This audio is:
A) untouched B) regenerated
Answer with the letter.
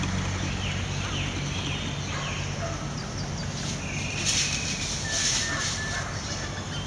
A